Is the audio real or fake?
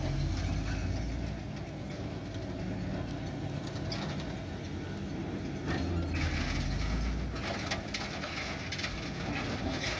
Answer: real